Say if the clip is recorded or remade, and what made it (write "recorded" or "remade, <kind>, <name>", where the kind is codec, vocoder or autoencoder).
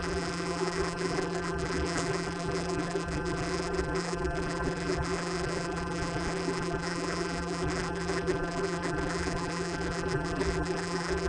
remade, vocoder, BigVGAN v2